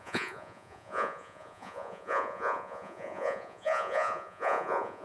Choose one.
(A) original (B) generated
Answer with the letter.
B